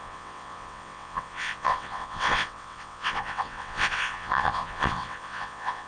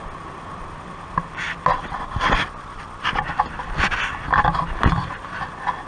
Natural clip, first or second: second